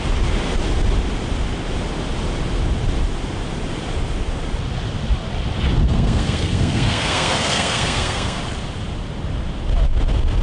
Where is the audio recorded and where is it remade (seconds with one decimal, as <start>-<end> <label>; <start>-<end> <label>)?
0.0-5.8 recorded; 5.8-8.4 remade; 8.4-10.4 recorded